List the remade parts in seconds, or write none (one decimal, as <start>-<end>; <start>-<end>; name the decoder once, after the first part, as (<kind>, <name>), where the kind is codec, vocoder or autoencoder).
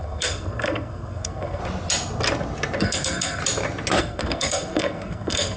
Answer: 0.0-1.6 (codec, SNAC); 2.8-3.4; 4.0-5.6